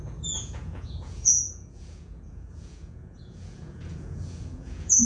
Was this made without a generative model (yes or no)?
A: no